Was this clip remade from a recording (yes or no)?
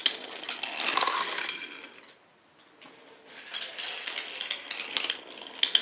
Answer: no